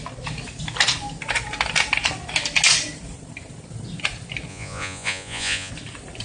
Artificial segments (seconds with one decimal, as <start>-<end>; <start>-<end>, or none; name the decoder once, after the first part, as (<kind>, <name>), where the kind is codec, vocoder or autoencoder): 4.5-5.7 (vocoder, Vocos)